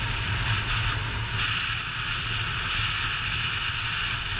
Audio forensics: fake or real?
real